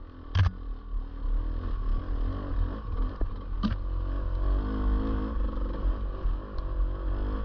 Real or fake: real